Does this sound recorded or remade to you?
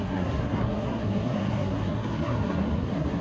remade